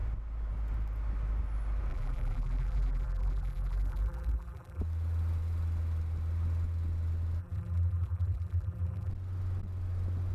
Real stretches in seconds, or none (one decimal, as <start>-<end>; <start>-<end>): 0.0-1.9; 4.8-7.4; 9.1-10.3